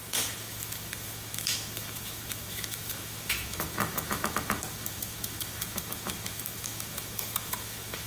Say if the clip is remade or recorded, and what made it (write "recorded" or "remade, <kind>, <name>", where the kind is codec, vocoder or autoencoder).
remade, autoencoder, DAC-VAE